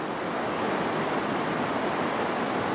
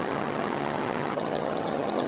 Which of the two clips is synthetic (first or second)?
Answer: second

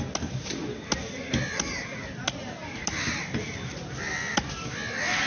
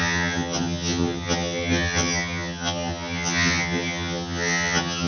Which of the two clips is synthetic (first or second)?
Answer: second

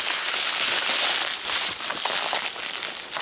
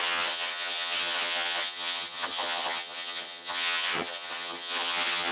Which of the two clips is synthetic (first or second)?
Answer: second